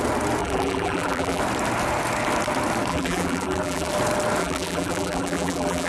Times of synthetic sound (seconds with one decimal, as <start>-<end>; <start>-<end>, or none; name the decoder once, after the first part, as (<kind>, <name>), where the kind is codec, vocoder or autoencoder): 0.4-1.4 (vocoder, BigVGAN v2); 2.9-3.9; 4.4-5.9